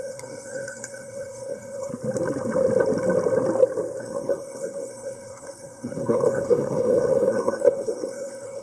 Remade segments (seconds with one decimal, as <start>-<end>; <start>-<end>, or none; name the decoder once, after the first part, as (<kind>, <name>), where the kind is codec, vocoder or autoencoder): 0.0-1.9 (codec, SNAC); 4.0-8.6